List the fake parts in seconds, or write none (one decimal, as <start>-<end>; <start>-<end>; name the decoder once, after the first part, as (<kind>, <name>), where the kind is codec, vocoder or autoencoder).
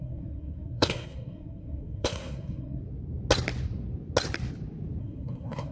0.0-2.8 (codec, SNAC); 5.0-5.7